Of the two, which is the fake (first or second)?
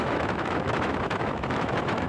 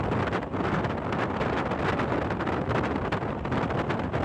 first